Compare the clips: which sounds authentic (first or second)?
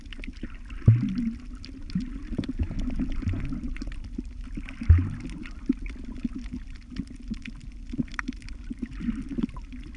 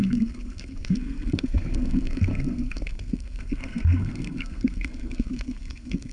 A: first